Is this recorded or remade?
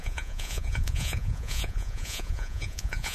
remade